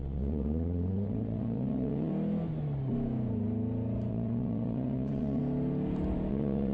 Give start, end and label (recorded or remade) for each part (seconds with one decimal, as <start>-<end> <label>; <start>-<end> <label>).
0.0-2.1 remade; 2.1-4.1 recorded; 4.1-5.4 remade; 5.4-6.3 recorded; 6.3-6.7 remade